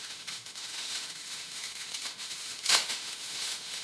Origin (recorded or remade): remade